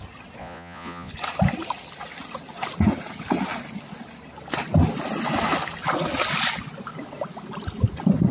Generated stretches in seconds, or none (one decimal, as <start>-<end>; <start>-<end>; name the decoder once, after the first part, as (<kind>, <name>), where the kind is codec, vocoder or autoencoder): 0.4-1.1 (vocoder, Vocos)